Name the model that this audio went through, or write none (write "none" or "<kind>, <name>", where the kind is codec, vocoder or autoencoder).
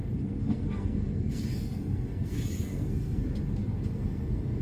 codec, SNAC